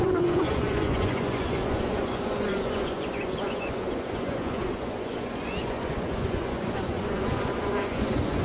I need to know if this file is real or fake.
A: fake